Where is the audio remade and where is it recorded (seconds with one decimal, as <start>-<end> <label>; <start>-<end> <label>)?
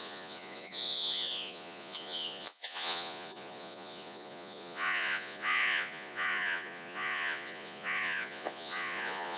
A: 0.0-9.4 remade